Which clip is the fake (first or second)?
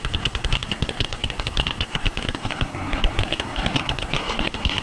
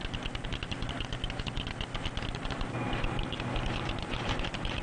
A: first